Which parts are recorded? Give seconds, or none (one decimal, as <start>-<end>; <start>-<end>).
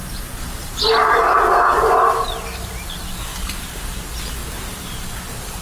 0.7-3.3; 4.0-4.4